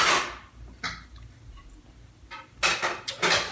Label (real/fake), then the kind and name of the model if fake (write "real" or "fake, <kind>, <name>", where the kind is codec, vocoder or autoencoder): real